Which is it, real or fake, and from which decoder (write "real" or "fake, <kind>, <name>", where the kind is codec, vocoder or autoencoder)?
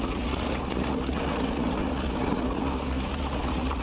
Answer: fake, vocoder, Vocos